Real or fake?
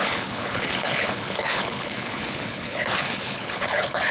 fake